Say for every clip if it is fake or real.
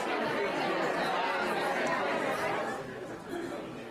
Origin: real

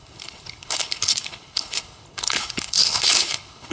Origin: fake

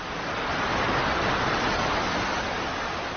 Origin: real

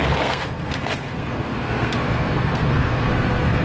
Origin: fake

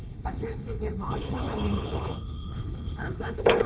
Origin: fake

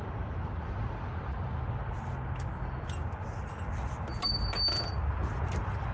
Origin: real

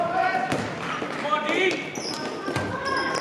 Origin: fake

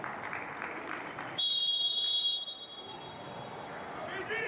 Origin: fake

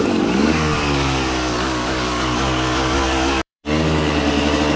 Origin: fake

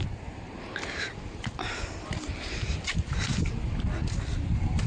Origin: real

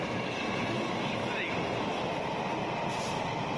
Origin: real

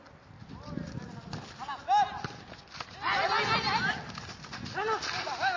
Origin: real